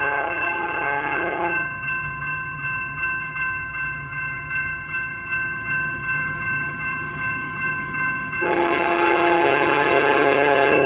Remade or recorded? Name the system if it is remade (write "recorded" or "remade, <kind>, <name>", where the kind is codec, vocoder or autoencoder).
remade, vocoder, HiFi-GAN